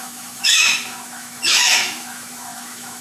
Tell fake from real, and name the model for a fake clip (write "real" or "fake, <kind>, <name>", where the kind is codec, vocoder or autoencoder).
fake, autoencoder, DAC-VAE